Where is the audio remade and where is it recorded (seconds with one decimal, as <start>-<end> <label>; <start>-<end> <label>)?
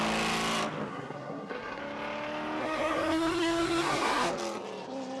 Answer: 0.0-0.9 recorded; 0.9-1.8 remade; 1.8-2.6 recorded; 2.6-4.3 remade; 4.3-5.2 recorded